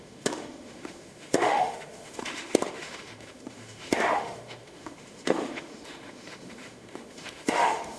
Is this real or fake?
fake